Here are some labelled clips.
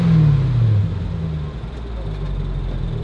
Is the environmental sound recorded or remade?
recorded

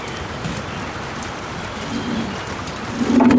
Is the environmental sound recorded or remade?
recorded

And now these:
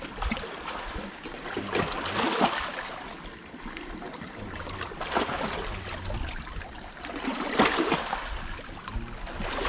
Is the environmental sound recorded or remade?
recorded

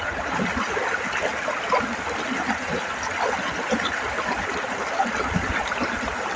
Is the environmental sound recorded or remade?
recorded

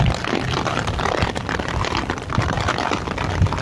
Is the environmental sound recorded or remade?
recorded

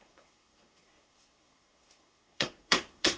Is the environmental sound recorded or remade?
remade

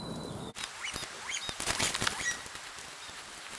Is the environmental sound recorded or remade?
recorded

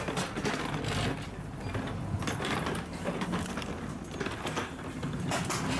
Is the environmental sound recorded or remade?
recorded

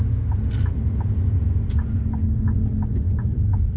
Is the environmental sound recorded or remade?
recorded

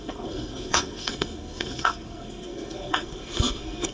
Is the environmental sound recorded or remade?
remade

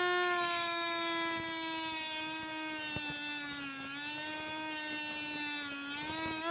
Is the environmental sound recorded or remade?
recorded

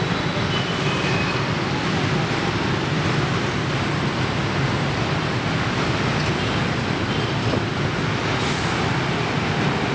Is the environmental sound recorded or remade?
recorded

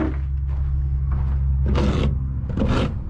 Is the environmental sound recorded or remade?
recorded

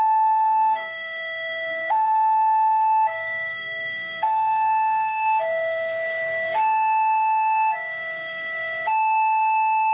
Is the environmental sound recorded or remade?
remade